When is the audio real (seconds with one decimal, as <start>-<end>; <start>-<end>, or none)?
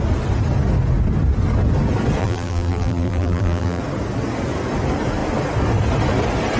0.0-2.2; 3.8-6.6